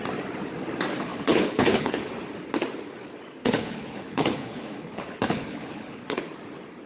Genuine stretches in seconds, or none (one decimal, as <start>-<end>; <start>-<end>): 0.0-1.1; 2.1-3.4; 6.2-6.9

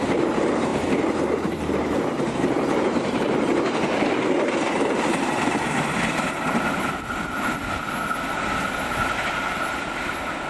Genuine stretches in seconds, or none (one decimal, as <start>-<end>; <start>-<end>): 7.6-9.7

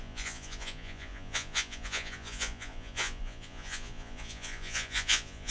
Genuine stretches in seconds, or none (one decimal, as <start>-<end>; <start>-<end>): none

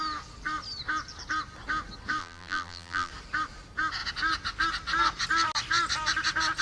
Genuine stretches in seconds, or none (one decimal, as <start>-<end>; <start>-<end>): 0.0-2.2; 3.1-6.6

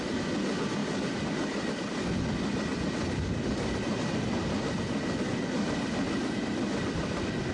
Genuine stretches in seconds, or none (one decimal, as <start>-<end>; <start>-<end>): 0.0-7.5

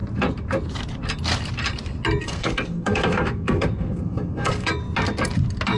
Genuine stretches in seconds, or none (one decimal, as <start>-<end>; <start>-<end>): 0.0-2.2; 4.7-5.8

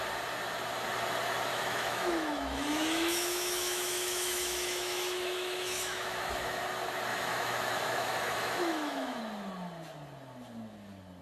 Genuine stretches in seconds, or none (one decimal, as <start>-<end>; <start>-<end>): 0.0-1.5; 6.6-7.1; 9.2-11.2